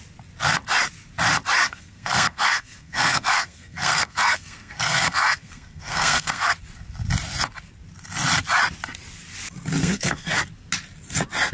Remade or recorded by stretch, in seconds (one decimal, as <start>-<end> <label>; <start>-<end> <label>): 0.0-1.6 recorded; 1.6-6.5 remade; 6.5-9.8 recorded; 9.8-10.4 remade; 10.4-11.5 recorded

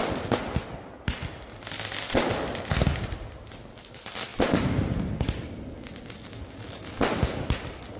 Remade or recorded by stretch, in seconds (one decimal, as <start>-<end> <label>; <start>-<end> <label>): 0.0-8.0 recorded

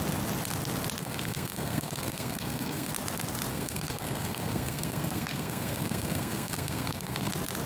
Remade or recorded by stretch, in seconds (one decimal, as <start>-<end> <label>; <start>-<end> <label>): 0.0-1.0 recorded; 1.0-2.9 remade; 2.9-3.5 recorded; 3.5-7.3 remade; 7.3-7.7 recorded